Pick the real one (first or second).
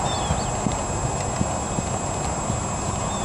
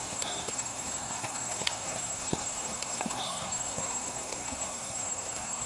first